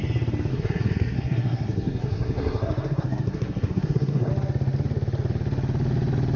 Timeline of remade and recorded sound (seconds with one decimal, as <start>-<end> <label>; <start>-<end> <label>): 0.0-0.5 recorded; 0.5-4.3 remade; 4.3-6.4 recorded